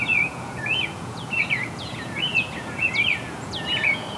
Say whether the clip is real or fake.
fake